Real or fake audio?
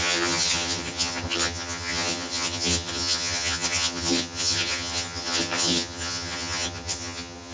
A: fake